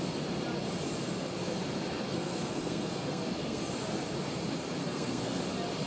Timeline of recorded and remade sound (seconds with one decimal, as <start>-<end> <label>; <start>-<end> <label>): 0.0-2.1 recorded; 2.1-3.6 remade; 3.6-4.8 recorded; 4.8-5.4 remade; 5.4-5.9 recorded